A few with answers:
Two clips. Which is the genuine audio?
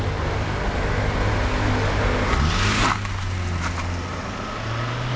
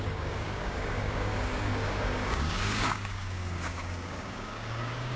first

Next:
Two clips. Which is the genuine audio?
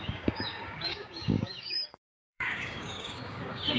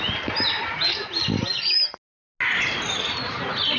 second